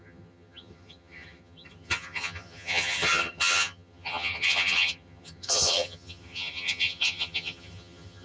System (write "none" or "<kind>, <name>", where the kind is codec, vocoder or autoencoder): vocoder, HiFi-GAN